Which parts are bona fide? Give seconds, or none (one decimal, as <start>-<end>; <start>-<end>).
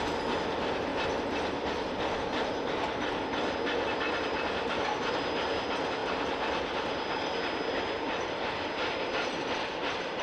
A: 0.0-10.2